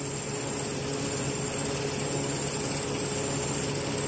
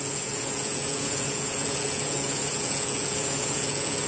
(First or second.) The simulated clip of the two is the second